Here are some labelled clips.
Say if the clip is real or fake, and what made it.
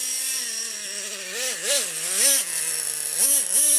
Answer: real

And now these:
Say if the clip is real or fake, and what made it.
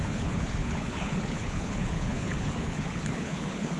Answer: fake, codec, HILCodec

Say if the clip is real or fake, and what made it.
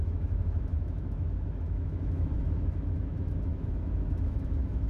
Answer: fake, autoencoder, DAC-VAE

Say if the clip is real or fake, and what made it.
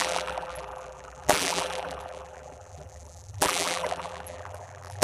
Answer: fake, vocoder, BigVGAN v2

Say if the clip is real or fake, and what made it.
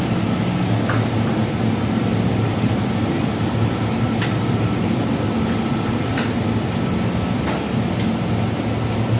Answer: real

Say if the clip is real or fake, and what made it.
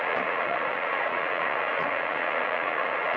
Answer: fake, vocoder, Vocos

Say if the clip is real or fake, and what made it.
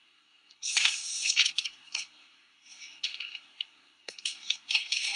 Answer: fake, codec, SNAC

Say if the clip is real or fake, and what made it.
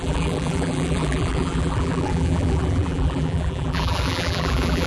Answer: fake, vocoder, BigVGAN v2